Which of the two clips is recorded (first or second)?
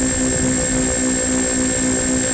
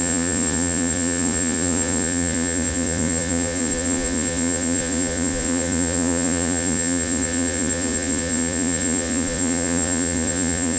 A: first